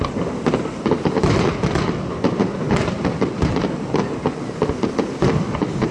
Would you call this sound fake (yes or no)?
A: no